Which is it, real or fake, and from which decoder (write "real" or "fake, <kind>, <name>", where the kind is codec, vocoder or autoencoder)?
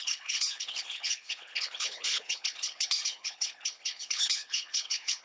fake, codec, HILCodec